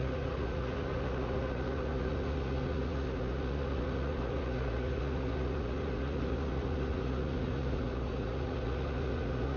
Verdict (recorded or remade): remade